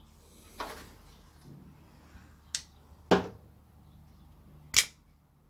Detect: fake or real real